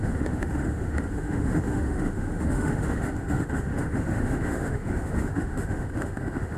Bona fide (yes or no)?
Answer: no